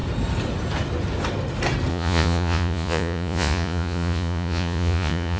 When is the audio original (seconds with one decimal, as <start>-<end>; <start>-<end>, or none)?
0.0-1.9